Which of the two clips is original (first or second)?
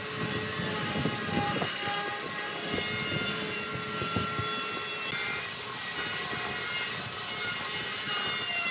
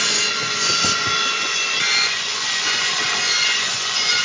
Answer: first